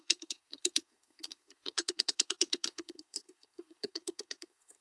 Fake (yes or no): yes